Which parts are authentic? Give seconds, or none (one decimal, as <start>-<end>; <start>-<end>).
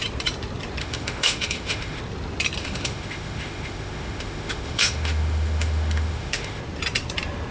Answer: 0.0-0.8; 2.0-2.6; 6.6-7.5